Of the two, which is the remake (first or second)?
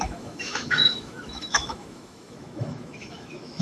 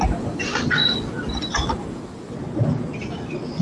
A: first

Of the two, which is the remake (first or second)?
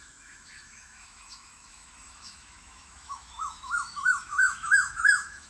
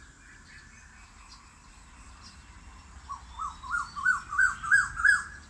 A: first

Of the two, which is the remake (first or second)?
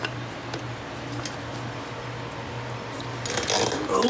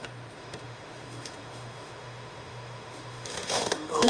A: second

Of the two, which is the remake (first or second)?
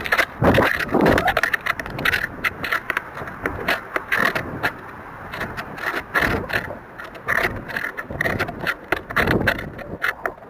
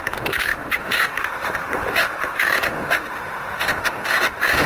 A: second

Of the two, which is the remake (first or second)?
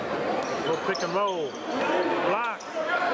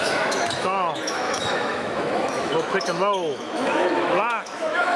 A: second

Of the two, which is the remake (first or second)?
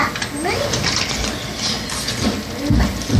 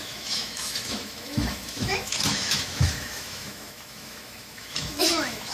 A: second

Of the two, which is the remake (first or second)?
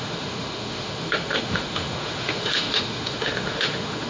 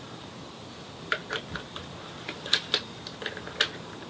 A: first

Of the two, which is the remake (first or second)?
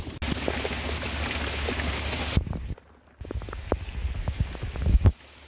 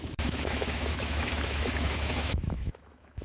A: second